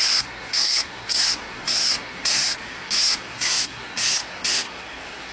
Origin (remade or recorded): remade